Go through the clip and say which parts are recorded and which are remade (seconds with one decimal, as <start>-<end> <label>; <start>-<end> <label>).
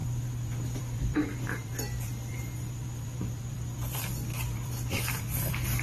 0.0-5.8 remade